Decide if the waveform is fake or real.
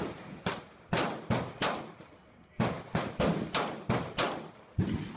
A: real